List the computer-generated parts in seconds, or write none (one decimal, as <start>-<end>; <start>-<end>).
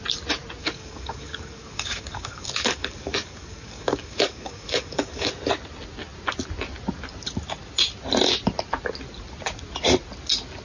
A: 0.6-5.3